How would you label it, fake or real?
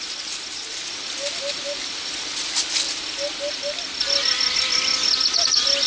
real